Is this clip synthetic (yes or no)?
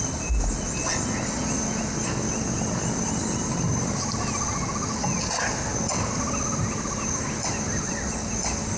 no